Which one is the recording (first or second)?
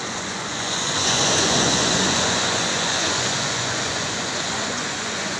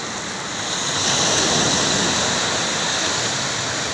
second